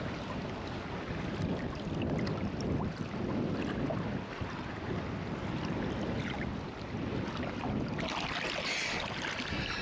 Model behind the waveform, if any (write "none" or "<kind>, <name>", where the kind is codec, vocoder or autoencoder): none